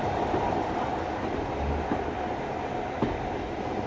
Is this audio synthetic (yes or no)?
no